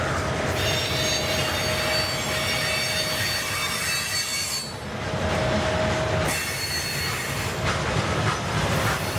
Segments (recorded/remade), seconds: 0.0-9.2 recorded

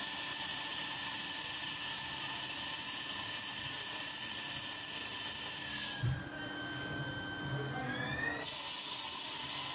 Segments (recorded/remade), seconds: 0.0-0.5 recorded; 0.5-4.7 remade; 4.7-9.7 recorded

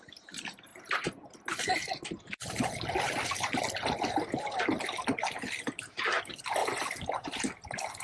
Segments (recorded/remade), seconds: 0.0-1.8 recorded; 1.8-2.7 remade; 2.7-6.6 recorded; 6.6-8.0 remade

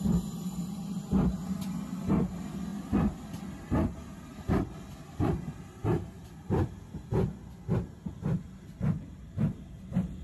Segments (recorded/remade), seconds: 0.0-10.2 recorded

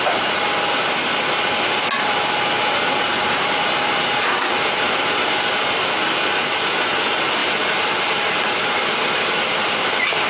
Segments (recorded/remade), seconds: 0.0-3.1 recorded; 3.1-4.5 remade; 4.5-7.4 recorded; 7.4-9.4 remade; 9.4-10.3 recorded